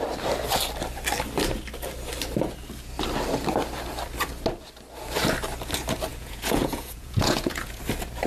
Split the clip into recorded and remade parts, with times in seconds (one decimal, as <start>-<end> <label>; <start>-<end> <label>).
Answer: 0.0-6.1 recorded; 6.1-7.8 remade; 7.8-8.3 recorded